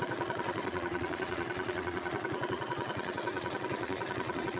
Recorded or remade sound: remade